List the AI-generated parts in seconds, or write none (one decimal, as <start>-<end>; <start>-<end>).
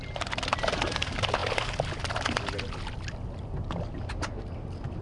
none